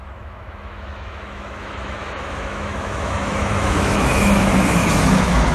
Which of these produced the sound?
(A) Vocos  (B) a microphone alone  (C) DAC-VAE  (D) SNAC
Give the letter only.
C